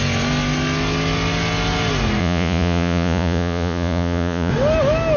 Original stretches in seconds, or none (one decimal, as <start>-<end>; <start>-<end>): 0.0-2.2; 4.5-5.2